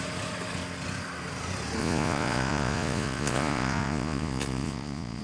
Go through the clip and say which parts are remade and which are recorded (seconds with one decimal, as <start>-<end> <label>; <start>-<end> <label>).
0.0-1.8 recorded; 1.8-5.2 remade